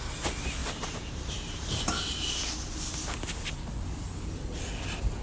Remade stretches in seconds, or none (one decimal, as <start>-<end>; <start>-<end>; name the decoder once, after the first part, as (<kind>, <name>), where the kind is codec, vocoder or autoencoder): 0.6-1.8 (vocoder, BigVGAN v2)